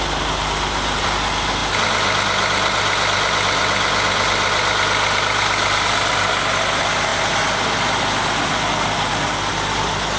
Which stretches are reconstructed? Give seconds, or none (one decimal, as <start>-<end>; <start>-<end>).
none